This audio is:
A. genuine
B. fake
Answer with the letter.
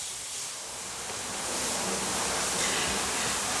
A